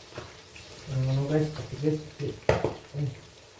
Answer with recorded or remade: recorded